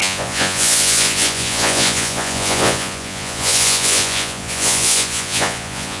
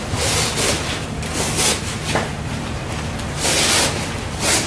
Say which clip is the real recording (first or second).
second